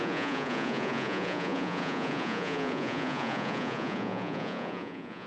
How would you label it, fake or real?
fake